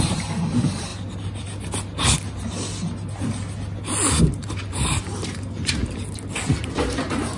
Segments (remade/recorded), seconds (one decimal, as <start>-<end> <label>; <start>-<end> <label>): 0.0-0.9 remade; 0.9-4.2 recorded; 4.2-5.8 remade; 5.8-6.6 recorded; 6.6-7.4 remade